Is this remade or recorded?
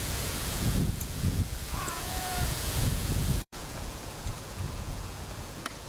remade